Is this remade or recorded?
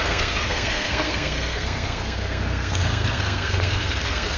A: remade